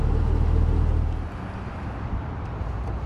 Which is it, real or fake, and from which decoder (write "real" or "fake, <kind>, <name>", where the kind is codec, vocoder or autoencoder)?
real